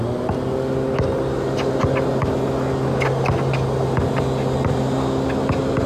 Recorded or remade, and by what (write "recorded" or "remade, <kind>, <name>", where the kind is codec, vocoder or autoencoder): recorded